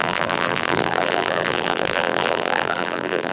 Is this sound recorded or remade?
remade